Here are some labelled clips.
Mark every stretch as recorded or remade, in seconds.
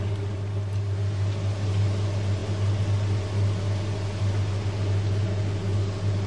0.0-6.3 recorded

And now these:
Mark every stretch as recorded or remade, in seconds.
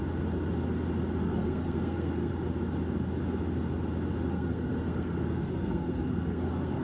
0.0-1.2 recorded; 1.2-2.3 remade; 2.3-4.3 recorded; 4.3-6.8 remade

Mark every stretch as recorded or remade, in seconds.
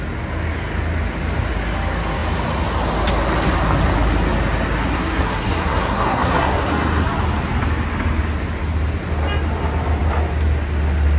0.0-4.8 recorded; 4.8-7.0 remade; 7.0-11.2 recorded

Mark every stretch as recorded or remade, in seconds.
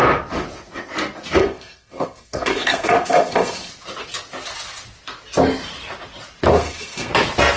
0.0-1.4 recorded; 1.4-3.7 remade; 3.7-6.5 recorded; 6.5-7.1 remade; 7.1-7.6 recorded